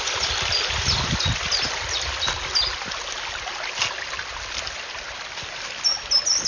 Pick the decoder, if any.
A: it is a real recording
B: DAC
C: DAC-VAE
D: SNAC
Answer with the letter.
A